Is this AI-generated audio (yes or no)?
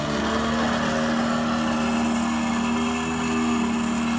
no